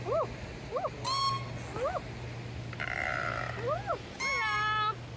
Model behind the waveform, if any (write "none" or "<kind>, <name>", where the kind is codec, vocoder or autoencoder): none